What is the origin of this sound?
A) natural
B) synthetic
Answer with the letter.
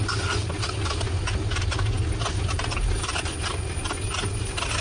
A